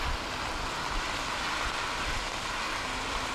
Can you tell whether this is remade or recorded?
recorded